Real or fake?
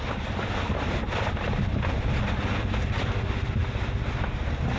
real